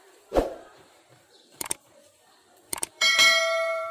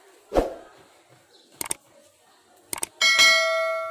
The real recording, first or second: second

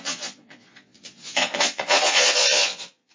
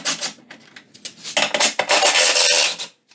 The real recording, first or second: second